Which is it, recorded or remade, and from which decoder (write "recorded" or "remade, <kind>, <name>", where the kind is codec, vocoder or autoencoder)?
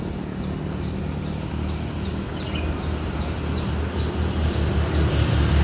recorded